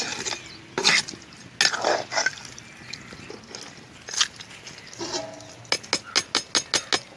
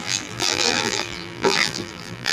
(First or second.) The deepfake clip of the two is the second